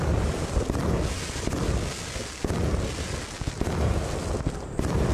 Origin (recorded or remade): recorded